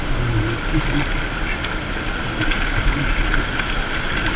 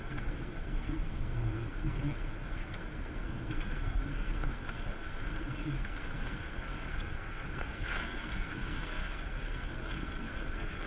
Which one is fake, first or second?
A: second